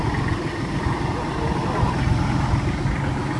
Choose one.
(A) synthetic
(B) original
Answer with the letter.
B